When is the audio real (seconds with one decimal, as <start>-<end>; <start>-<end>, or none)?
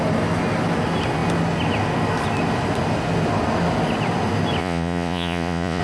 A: 0.0-4.6